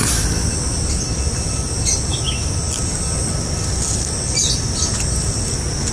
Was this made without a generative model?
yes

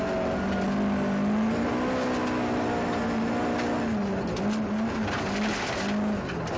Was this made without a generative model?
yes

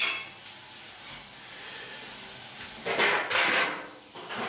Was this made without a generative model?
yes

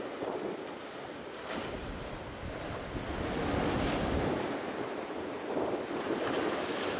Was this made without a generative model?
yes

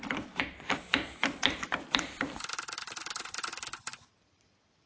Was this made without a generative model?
no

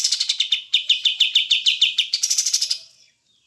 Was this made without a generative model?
no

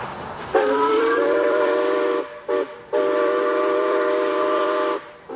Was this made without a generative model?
no